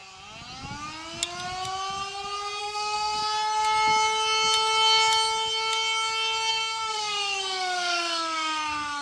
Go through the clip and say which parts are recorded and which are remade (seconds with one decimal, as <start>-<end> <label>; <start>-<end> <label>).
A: 0.0-2.6 recorded; 2.6-3.2 remade; 3.2-6.5 recorded; 6.5-9.0 remade